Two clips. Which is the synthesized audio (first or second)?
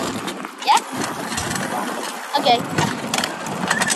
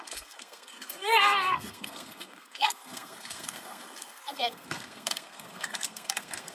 second